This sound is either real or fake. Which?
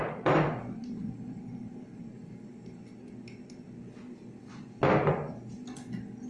real